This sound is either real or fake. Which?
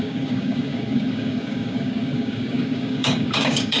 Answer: fake